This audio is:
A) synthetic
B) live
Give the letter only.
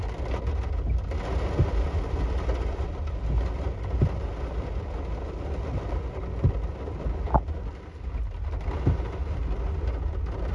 B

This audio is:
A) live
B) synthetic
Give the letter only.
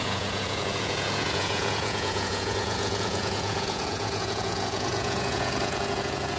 B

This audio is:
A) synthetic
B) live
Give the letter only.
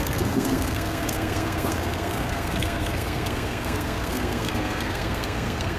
A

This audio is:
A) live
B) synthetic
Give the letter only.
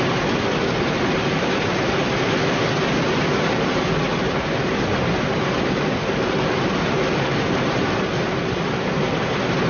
A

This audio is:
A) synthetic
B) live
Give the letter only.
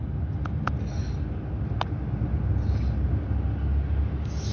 B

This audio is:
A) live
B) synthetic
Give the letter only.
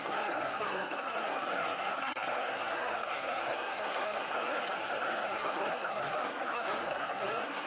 B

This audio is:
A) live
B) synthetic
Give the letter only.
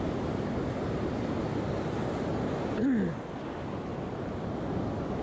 A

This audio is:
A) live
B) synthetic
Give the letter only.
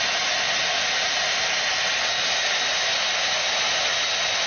A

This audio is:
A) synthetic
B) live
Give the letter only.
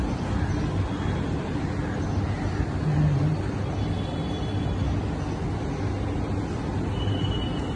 B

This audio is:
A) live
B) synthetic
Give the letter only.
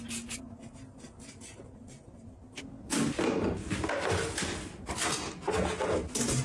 A